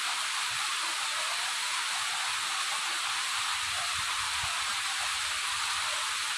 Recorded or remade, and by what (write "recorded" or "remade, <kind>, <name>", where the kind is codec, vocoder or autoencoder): recorded